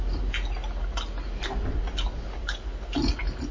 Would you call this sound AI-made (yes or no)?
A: no